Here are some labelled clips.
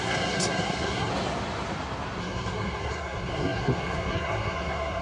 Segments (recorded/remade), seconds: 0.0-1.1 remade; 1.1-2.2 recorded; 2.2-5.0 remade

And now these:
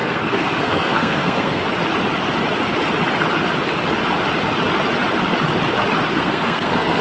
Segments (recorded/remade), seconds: 0.0-1.6 remade; 1.6-6.1 recorded; 6.1-7.0 remade

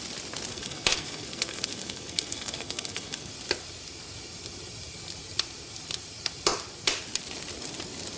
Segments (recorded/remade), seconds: 0.0-0.5 recorded; 0.5-3.3 remade; 3.3-8.2 recorded

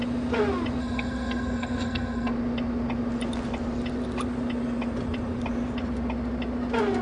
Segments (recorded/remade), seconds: 0.0-0.8 recorded; 0.8-2.3 remade; 2.3-7.0 recorded